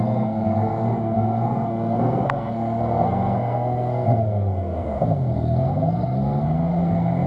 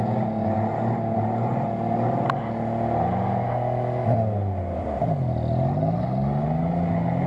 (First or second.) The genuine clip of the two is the second